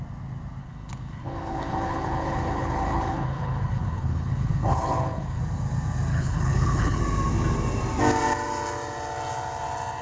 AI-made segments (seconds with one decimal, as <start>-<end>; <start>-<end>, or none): 0.6-5.4; 6.1-7.0